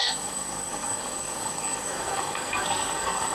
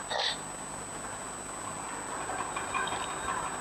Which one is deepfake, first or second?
first